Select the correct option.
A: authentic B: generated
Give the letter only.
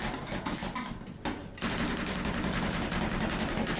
A